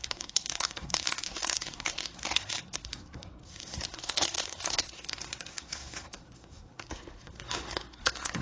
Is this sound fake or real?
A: fake